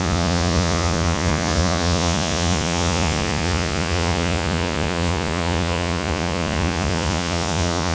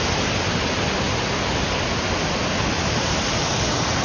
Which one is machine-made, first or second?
first